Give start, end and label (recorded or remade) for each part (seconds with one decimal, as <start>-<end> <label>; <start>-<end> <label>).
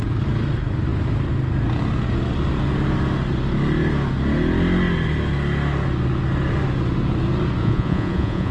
0.0-7.6 recorded; 7.6-8.5 remade